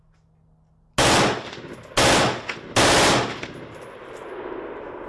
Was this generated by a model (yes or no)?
no